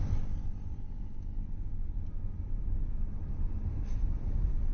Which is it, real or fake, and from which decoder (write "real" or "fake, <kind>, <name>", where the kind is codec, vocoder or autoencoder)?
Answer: real